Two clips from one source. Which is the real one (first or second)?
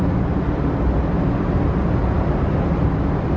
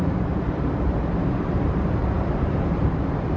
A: first